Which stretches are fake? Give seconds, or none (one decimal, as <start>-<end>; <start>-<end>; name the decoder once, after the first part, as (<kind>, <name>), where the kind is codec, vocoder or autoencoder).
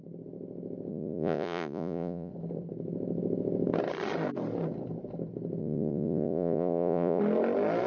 0.9-2.3 (vocoder, Vocos); 5.6-7.2